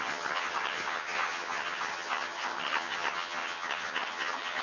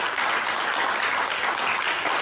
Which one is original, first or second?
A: second